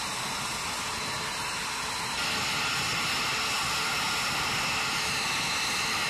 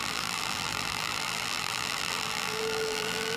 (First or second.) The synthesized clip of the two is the second